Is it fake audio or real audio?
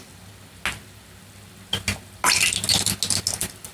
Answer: real